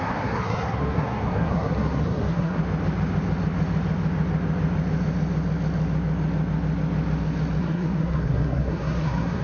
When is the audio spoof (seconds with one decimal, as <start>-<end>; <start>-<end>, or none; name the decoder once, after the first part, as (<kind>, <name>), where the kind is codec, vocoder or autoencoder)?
0.0-2.6 (codec, SNAC); 7.6-9.4